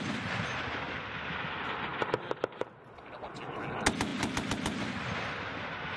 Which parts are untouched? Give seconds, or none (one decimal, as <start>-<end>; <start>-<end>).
0.0-6.0